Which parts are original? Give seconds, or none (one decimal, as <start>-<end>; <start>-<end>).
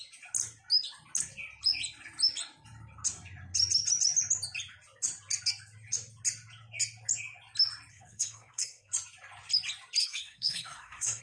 0.0-7.9; 8.9-10.0